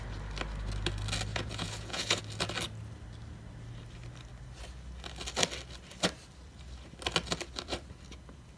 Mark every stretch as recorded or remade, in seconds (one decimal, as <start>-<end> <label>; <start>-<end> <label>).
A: 0.0-1.3 recorded; 1.3-2.2 remade; 2.2-8.6 recorded